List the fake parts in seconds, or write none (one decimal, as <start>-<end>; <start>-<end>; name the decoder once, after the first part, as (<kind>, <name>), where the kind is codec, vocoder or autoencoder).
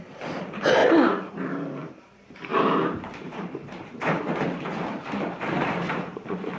0.0-6.6 (vocoder, BigVGAN v2)